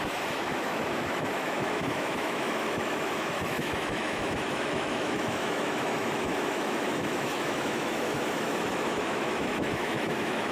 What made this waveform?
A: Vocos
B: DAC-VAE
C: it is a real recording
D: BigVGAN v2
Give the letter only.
B